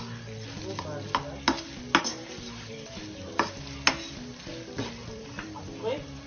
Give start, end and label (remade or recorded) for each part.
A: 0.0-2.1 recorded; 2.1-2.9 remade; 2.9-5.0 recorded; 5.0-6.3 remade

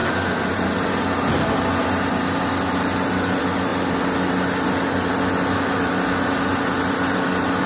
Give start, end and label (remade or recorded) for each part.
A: 0.0-3.7 recorded; 3.7-5.1 remade; 5.1-7.7 recorded

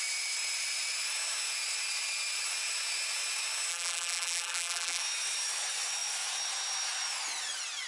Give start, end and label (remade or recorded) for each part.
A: 0.0-3.7 recorded; 3.7-5.0 remade; 5.0-7.9 recorded

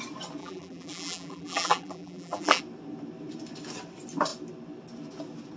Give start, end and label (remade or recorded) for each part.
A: 0.0-0.4 recorded; 0.4-2.6 remade; 2.6-5.6 recorded

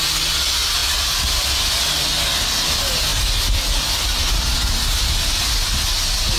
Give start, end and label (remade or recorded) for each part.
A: 0.0-0.8 recorded; 0.8-1.6 remade; 1.6-6.4 recorded

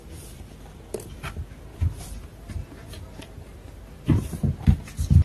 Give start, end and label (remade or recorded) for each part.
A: 0.0-1.7 recorded; 1.7-4.8 remade; 4.8-5.2 recorded

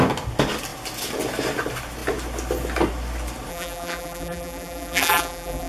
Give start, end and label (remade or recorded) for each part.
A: 0.0-3.5 recorded; 3.5-5.7 remade